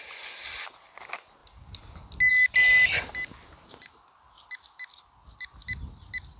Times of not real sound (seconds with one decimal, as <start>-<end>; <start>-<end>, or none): none